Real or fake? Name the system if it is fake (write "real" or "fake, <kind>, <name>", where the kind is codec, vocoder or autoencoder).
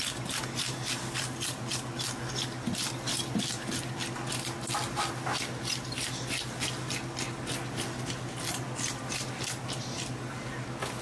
real